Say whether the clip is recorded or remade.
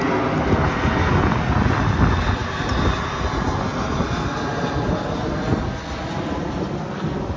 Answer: recorded